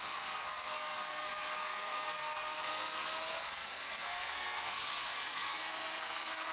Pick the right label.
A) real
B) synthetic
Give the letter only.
B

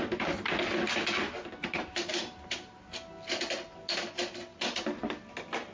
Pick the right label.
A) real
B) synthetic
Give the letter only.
A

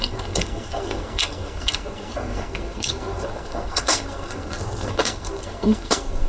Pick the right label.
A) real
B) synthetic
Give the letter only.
B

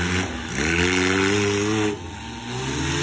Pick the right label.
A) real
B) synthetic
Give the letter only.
A